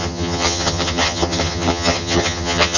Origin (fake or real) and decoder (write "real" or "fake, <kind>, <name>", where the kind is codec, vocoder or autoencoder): fake, vocoder, HiFi-GAN